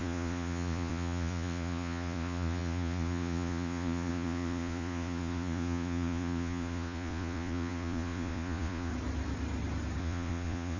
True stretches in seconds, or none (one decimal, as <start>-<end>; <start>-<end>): 8.9-10.0